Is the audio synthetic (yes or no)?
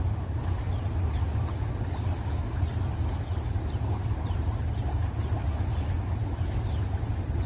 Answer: no